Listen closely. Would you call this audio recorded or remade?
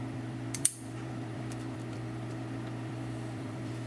remade